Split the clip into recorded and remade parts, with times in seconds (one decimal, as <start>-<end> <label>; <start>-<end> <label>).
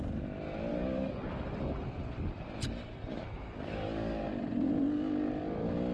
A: 0.0-0.7 recorded; 0.7-1.2 remade; 1.2-3.1 recorded; 3.1-4.2 remade; 4.2-5.9 recorded